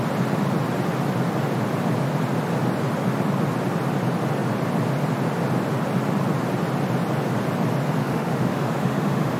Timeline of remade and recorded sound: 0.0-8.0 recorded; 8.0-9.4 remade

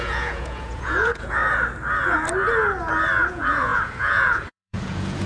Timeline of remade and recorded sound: 0.0-1.4 remade; 1.4-3.3 recorded; 3.3-5.3 remade

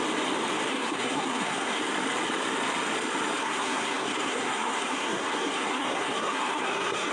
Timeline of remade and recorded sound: 0.0-0.7 recorded; 0.7-1.8 remade; 1.8-3.4 recorded; 3.4-7.1 remade